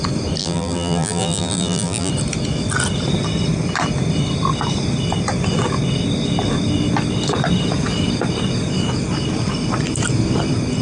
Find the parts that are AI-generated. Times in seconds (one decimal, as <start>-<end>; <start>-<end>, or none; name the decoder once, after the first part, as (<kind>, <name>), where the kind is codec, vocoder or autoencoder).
0.4-2.1 (vocoder, BigVGAN v2)